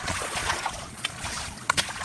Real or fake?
fake